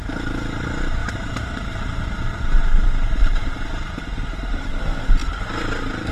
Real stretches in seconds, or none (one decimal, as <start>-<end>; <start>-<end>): 0.0-1.0; 4.7-6.1